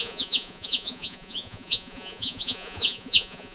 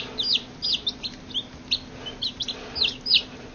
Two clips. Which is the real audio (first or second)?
second